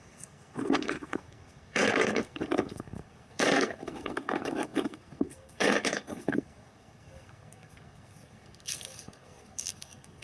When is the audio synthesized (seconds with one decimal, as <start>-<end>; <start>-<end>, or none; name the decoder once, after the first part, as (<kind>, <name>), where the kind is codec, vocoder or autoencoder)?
0.0-10.2 (codec, SNAC)